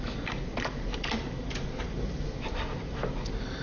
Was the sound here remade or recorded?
recorded